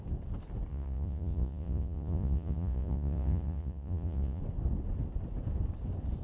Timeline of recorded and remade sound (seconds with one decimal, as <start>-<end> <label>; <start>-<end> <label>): 0.0-0.7 recorded; 0.7-4.4 remade; 4.4-6.2 recorded